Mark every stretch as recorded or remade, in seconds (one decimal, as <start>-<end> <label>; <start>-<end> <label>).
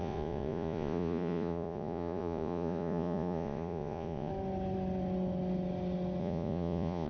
0.0-4.3 remade; 4.3-6.2 recorded; 6.2-7.1 remade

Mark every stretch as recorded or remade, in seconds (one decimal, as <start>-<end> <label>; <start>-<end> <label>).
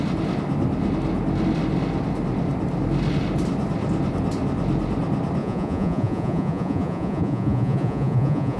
0.0-5.4 recorded; 5.4-8.6 remade